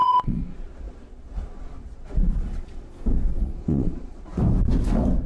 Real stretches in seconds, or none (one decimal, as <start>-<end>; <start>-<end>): 2.9-3.3; 4.4-5.3